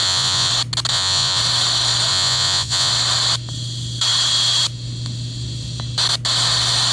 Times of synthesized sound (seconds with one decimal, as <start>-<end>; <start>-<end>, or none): 0.0-0.5; 0.9-1.4; 2.1-2.9